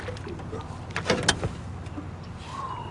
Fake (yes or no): no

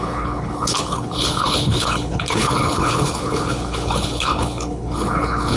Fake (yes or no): yes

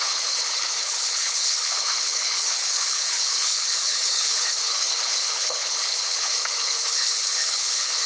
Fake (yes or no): yes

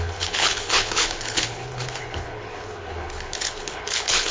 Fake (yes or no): yes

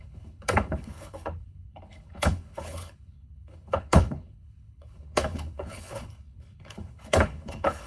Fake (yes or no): yes